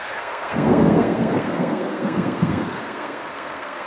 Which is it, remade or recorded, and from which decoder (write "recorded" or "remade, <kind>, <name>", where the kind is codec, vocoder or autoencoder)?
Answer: remade, codec, SNAC